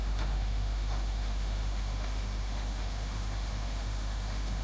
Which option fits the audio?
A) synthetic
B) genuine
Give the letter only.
A